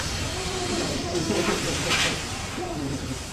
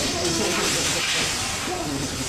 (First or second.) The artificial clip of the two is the first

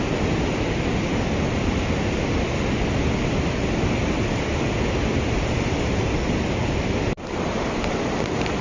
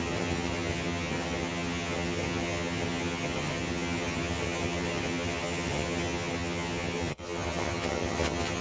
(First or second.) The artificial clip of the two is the second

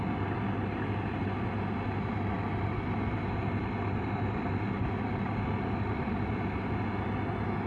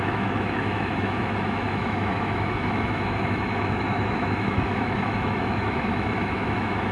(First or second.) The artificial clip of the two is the second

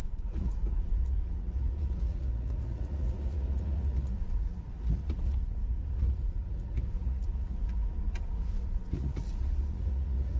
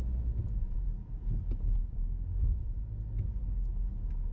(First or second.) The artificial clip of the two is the first